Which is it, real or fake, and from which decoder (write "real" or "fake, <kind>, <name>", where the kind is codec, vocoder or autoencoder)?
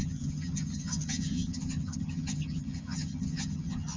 fake, vocoder, HiFi-GAN